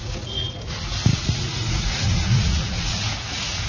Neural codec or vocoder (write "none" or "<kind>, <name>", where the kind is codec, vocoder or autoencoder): vocoder, Vocos